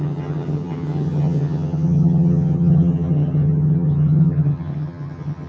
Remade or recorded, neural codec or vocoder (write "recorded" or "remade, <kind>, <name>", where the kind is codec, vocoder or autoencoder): remade, vocoder, HiFi-GAN